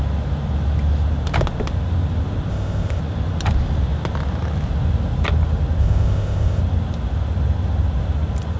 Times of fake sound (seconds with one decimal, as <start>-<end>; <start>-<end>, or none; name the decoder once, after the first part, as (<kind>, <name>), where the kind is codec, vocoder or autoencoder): 2.5-3.0 (codec, ZipCodec); 5.8-6.6